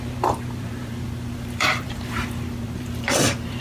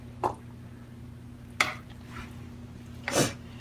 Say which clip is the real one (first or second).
second